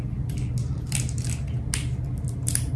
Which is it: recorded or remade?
recorded